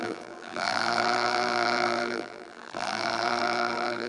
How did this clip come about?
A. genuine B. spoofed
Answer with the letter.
B